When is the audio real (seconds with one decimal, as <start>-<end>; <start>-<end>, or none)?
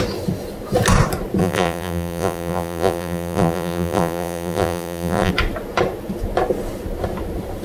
0.0-1.4; 5.3-7.6